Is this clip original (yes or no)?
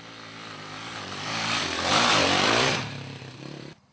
no